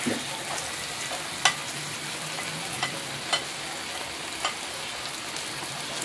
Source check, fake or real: real